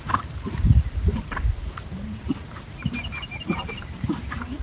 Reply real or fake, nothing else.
fake